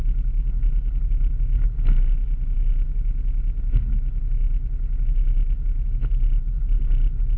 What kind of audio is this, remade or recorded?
recorded